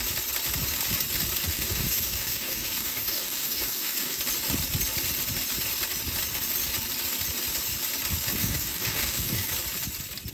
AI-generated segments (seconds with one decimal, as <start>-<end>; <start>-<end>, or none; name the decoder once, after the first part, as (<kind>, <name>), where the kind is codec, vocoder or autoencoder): 1.5-4.2 (codec, DAC); 8.4-9.5